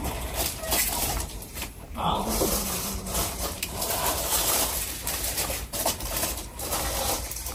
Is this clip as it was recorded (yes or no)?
no